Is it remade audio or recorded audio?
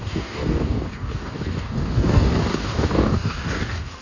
remade